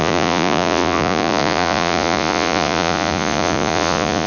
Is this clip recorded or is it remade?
remade